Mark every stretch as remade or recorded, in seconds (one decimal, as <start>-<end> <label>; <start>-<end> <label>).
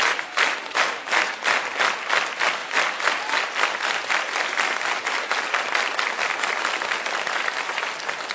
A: 0.0-8.3 recorded